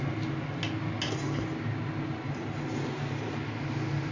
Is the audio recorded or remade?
recorded